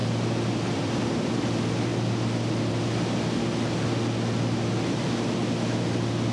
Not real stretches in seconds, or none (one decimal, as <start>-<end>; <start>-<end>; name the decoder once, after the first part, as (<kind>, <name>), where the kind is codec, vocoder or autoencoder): 0.0-1.3 (vocoder, BigVGAN v2); 1.9-2.7